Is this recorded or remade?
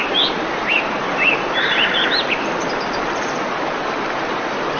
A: recorded